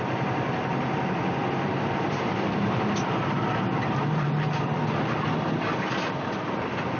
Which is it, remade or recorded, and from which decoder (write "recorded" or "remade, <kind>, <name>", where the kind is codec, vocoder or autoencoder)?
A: remade, vocoder, BigVGAN v2